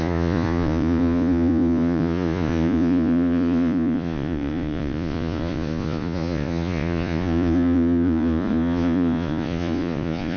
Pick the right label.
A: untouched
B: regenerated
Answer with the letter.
B